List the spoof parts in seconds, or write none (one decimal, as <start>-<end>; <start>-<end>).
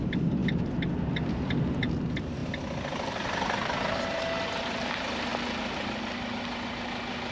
none